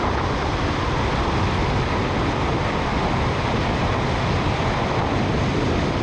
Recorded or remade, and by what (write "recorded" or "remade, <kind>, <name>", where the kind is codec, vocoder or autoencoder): recorded